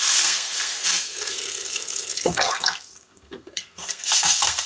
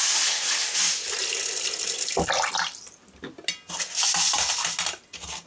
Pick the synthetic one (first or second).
first